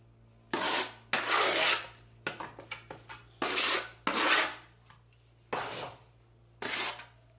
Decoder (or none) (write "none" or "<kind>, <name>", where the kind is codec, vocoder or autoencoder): none